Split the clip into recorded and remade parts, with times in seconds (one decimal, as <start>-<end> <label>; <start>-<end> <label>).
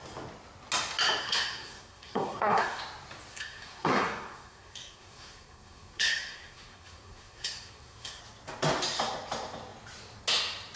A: 0.0-1.2 recorded; 1.2-2.8 remade; 2.8-3.3 recorded; 3.3-8.2 remade; 8.2-10.8 recorded